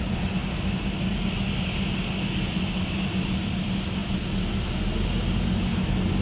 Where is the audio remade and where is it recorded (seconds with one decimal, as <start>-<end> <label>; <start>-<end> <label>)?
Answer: 0.0-6.2 recorded